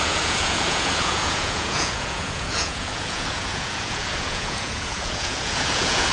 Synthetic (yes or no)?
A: yes